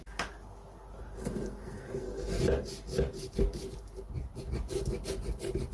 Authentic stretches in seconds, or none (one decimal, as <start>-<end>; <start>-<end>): 0.0-1.2; 2.4-5.7